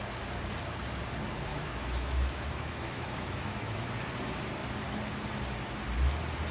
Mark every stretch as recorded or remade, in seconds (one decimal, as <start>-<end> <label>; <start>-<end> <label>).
0.0-1.5 recorded; 1.5-3.9 remade; 3.9-6.5 recorded